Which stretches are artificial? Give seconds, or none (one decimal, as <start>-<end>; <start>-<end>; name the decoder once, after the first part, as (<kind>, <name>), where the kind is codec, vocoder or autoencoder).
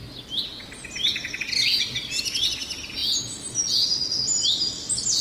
none